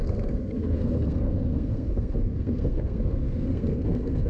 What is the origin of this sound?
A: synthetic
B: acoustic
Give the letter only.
A